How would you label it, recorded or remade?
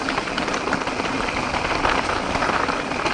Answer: recorded